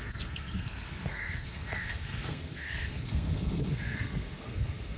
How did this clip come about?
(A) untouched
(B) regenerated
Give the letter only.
B